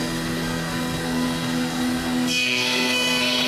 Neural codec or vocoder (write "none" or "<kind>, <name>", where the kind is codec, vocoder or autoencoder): codec, SNAC